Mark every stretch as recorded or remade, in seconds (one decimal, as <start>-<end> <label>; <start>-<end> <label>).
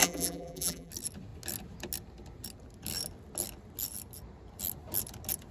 0.0-0.9 remade; 0.9-5.5 recorded